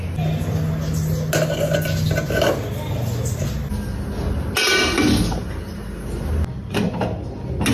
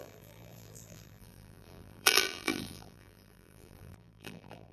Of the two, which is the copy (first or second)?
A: second